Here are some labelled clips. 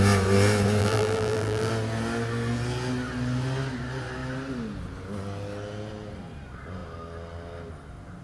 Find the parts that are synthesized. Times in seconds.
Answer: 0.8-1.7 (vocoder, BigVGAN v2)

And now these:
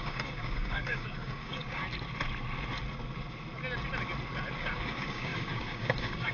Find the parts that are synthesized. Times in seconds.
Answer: 0.0-1.8 (codec, DAC); 4.6-6.3

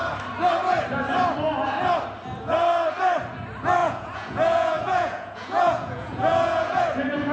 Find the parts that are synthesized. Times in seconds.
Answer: 3.8-6.8 (vocoder, Vocos)

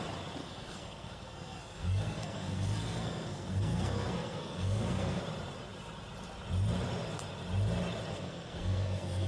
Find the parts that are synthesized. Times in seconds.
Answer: 0.4-5.2 (codec, SNAC); 8.1-9.3